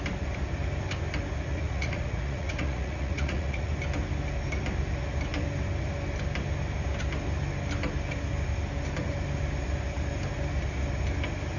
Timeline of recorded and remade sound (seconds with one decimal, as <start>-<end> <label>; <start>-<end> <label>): 0.0-1.5 recorded; 1.5-3.7 remade; 3.7-11.6 recorded